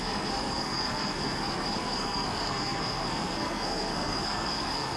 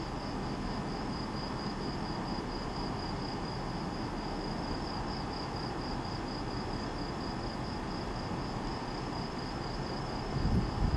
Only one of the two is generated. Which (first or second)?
first